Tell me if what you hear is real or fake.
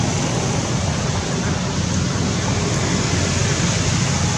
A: real